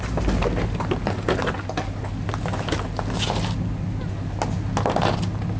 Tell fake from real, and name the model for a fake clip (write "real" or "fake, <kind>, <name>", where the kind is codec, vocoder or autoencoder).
real